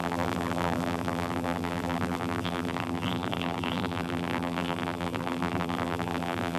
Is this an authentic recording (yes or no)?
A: no